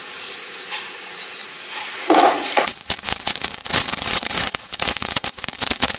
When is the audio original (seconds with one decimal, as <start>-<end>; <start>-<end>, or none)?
none